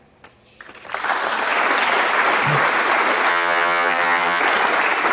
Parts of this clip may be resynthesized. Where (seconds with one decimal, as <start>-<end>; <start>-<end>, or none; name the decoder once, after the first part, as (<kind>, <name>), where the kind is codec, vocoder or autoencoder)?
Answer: 3.3-4.4 (vocoder, HiFi-GAN)